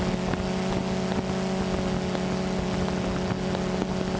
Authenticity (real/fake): real